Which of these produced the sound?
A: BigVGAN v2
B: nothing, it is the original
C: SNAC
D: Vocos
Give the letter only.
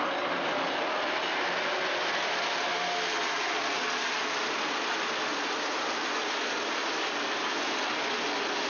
B